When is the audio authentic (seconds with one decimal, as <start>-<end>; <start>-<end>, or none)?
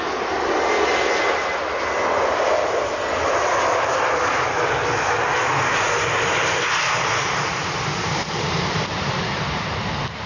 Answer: 0.0-7.3; 9.7-10.3